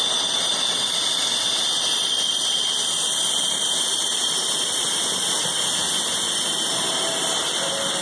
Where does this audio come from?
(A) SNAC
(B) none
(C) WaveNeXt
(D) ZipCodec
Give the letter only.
B